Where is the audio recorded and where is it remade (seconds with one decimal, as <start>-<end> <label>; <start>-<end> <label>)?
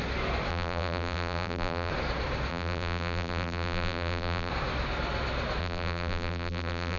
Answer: 0.0-0.5 recorded; 0.5-1.9 remade; 1.9-2.5 recorded; 2.5-4.5 remade; 4.5-5.6 recorded; 5.6-7.0 remade